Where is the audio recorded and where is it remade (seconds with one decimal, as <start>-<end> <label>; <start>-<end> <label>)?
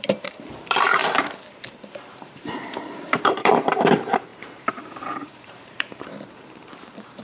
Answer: 0.0-1.0 remade; 1.0-2.2 recorded; 2.2-7.2 remade